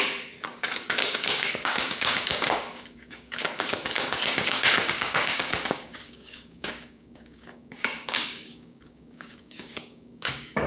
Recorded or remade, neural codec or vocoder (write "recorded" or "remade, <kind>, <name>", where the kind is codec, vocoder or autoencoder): remade, codec, DAC